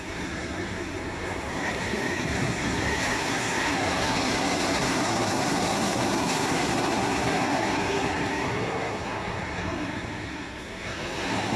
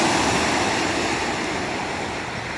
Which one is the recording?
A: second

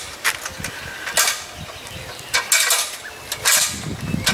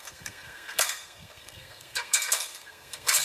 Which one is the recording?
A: first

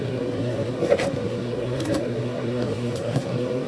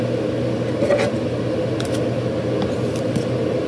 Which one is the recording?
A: second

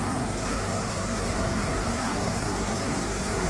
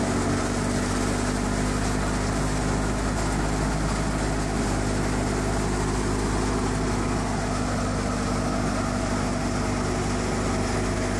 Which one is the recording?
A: second